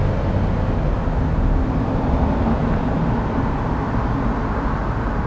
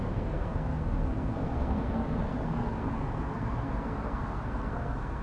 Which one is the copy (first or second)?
second